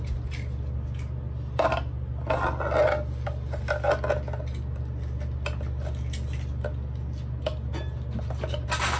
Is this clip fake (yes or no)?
no